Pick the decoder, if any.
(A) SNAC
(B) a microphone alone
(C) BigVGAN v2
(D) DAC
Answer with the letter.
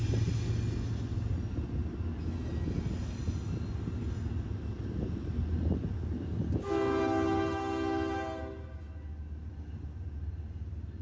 B